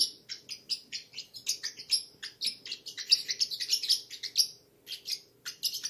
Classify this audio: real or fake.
real